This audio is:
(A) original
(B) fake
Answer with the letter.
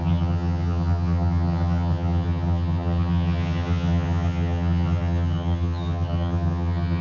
B